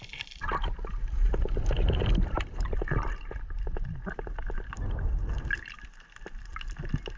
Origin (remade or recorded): remade